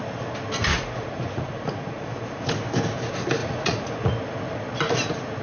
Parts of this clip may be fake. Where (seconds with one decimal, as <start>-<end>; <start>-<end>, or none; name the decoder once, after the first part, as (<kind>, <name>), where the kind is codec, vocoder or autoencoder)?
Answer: 0.7-2.5 (vocoder, Vocos); 3.4-4.1